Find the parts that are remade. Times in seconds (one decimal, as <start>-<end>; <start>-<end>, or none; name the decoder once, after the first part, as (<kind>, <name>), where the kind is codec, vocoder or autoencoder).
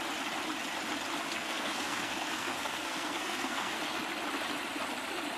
1.3-3.8 (codec, SNAC)